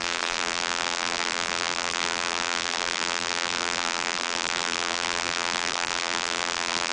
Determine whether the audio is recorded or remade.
remade